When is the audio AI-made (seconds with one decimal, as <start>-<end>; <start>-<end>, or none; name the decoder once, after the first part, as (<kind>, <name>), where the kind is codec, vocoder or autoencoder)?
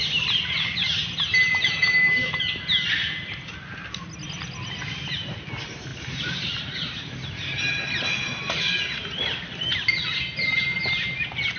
none